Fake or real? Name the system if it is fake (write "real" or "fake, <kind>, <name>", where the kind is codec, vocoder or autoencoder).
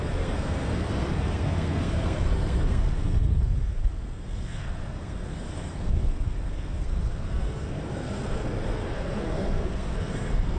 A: fake, codec, SNAC